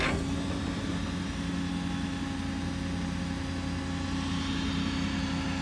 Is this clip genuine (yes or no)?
yes